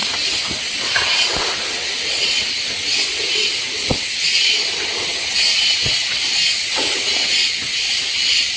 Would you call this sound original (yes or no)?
no